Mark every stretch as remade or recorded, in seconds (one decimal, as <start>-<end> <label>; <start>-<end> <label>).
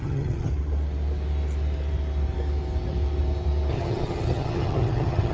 0.0-0.5 remade; 0.5-3.7 recorded; 3.7-5.3 remade